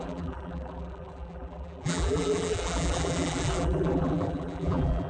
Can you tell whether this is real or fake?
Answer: fake